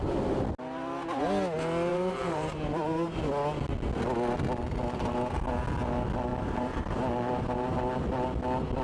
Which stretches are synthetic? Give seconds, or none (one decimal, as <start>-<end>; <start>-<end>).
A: 1.9-3.2; 6.3-7.7